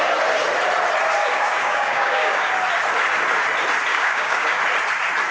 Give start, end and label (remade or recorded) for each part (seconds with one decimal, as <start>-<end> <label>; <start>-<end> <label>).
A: 0.0-1.2 recorded; 1.2-2.5 remade; 2.5-3.9 recorded; 3.9-4.6 remade; 4.6-5.3 recorded